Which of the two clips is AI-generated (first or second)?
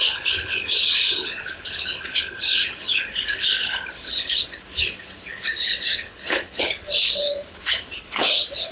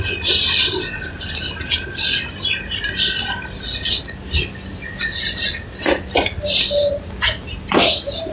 first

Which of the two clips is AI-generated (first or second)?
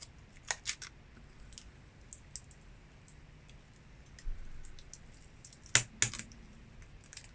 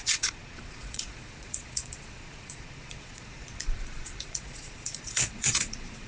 second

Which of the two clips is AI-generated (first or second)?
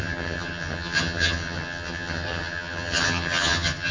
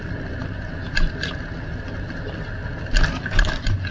first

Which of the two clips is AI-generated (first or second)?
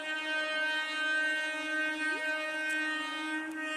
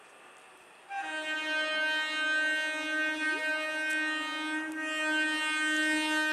first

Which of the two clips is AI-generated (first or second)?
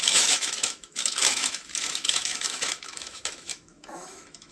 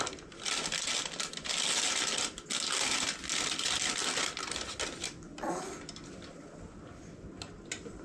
first